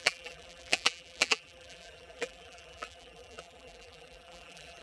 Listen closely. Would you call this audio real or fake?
fake